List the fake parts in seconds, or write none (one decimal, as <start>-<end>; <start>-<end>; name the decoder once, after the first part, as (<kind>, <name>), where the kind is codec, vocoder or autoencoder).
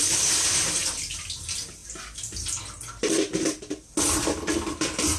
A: none